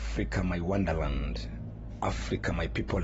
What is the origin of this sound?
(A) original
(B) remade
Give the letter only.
A